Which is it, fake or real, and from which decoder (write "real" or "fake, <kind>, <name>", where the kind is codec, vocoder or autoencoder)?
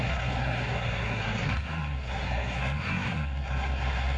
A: fake, codec, SNAC